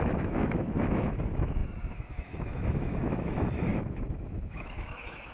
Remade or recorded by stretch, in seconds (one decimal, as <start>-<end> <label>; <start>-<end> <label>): 0.0-5.3 remade